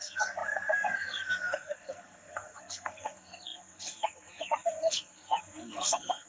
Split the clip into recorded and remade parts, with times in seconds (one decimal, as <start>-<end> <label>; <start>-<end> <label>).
0.0-6.3 remade